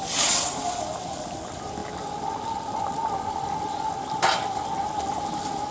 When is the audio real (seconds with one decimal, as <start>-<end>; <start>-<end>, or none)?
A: 0.5-5.7